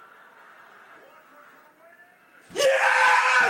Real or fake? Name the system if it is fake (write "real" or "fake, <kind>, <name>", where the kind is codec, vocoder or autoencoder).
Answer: real